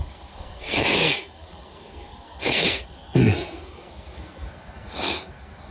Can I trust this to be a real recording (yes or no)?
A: no